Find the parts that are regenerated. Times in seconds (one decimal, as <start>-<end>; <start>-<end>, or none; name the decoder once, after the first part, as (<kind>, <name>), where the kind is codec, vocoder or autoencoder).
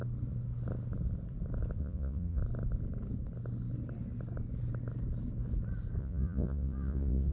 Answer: 1.8-2.4 (vocoder, Vocos); 6.0-7.3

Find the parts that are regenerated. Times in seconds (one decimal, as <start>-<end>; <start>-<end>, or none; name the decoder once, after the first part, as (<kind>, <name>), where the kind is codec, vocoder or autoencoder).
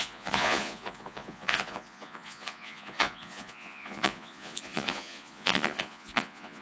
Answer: 0.0-6.6 (vocoder, Vocos)